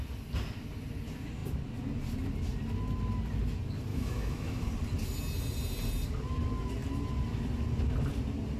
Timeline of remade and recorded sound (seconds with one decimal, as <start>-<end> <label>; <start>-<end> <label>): 0.0-3.9 recorded; 3.9-4.7 remade; 4.7-8.6 recorded